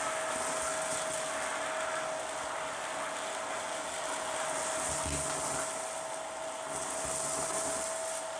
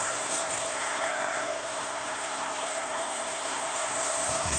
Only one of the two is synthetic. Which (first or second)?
second